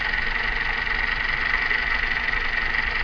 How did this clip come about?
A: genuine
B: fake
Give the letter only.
A